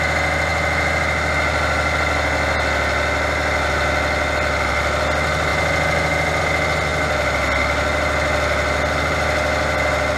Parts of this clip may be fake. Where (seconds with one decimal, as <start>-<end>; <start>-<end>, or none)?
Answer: none